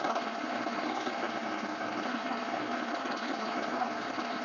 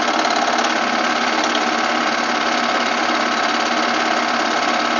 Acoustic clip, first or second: second